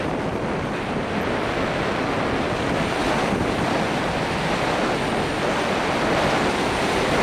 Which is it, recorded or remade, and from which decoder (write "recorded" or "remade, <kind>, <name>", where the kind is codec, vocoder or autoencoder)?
recorded